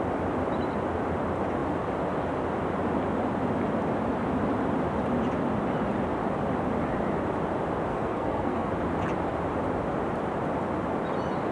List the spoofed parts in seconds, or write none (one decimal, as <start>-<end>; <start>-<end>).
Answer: 7.9-8.7